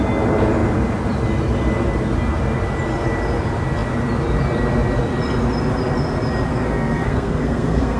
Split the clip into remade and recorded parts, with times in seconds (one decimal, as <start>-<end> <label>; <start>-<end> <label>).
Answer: 0.0-6.5 recorded; 6.5-8.0 remade